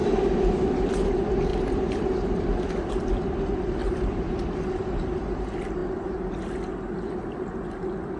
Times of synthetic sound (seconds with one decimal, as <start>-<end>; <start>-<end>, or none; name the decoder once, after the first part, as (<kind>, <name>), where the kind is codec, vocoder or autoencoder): 0.0-1.1 (vocoder, BigVGAN v2); 1.5-2.4; 3.8-4.7

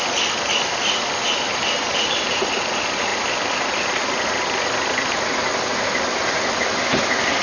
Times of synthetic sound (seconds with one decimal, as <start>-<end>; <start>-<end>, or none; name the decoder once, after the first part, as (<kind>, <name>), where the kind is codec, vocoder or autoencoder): 1.5-2.5 (vocoder, BigVGAN v2)

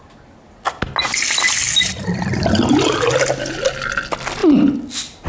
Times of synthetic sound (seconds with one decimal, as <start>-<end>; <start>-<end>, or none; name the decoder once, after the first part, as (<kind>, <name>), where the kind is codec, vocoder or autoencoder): none

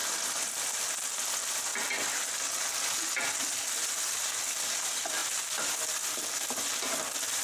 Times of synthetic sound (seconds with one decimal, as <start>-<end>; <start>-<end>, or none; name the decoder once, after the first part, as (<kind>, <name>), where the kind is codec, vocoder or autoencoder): none

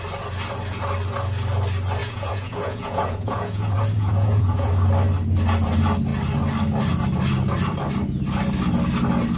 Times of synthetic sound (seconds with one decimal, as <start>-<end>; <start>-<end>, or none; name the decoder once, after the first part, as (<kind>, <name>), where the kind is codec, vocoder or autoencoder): 2.0-4.7 (vocoder, Vocos)

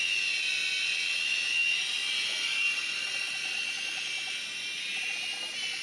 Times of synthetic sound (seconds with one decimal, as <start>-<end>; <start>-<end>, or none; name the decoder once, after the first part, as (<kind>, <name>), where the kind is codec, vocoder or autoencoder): none